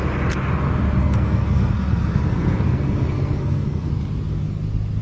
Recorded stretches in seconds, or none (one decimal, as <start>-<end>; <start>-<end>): 0.0-1.0; 3.9-5.0